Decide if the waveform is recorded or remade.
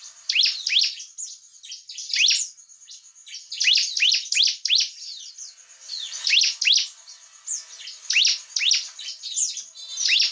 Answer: recorded